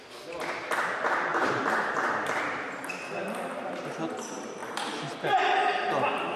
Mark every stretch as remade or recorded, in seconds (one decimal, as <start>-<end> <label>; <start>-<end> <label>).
0.0-1.3 recorded; 1.3-3.8 remade; 3.8-4.6 recorded; 4.6-5.3 remade; 5.3-6.4 recorded